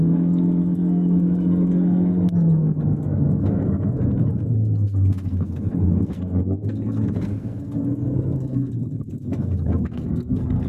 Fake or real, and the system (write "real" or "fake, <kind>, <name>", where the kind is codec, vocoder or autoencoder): fake, codec, SNAC